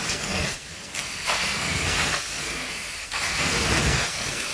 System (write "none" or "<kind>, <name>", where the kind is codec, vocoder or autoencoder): codec, SNAC